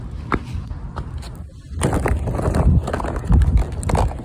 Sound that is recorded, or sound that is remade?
recorded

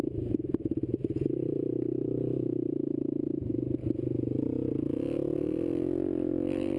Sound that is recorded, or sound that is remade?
recorded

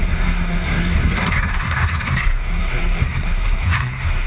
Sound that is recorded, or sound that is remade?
remade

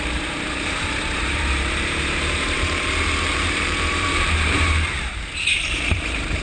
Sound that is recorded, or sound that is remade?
remade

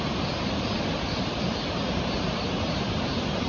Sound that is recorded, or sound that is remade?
recorded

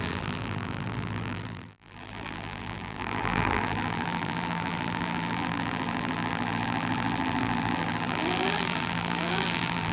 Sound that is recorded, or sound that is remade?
remade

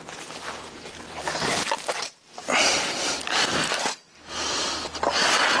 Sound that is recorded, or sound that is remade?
remade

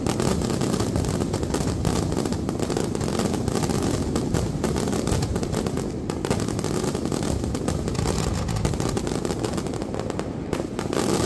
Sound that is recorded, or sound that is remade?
recorded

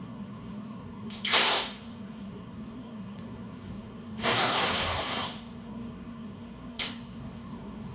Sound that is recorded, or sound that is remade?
remade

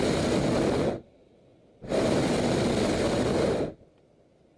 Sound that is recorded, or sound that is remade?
recorded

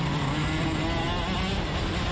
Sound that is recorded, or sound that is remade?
recorded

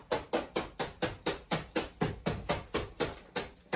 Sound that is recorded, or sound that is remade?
recorded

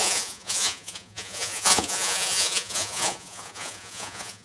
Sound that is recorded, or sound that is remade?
remade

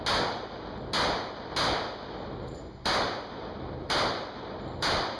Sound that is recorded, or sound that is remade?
recorded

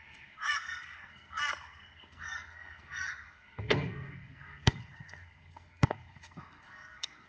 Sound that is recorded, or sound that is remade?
remade